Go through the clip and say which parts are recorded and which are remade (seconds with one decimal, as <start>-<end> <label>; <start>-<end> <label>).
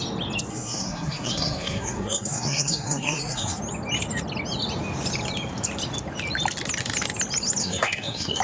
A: 0.0-0.5 recorded; 0.5-3.6 remade; 3.6-7.6 recorded; 7.6-8.4 remade